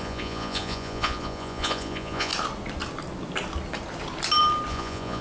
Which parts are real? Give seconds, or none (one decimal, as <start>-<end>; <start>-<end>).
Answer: 2.3-4.7